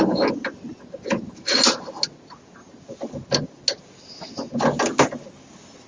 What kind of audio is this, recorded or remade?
recorded